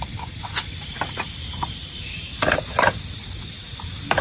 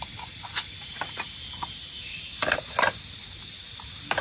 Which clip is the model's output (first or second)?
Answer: first